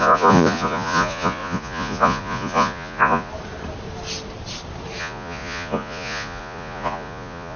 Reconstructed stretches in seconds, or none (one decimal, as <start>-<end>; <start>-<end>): 0.0-3.3; 5.0-7.6